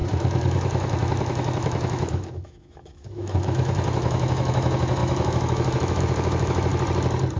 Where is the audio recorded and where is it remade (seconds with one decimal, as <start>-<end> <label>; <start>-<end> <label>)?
0.0-6.7 remade; 6.7-7.4 recorded